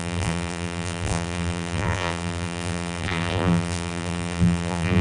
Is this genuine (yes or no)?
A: no